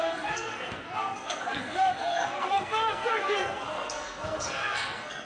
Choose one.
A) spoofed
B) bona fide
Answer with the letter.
A